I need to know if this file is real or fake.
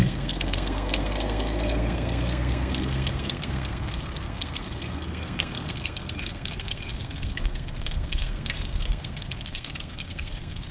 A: fake